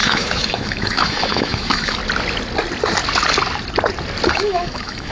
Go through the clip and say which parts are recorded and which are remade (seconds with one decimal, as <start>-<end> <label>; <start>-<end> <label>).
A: 0.0-2.0 remade; 2.0-4.3 recorded; 4.3-5.1 remade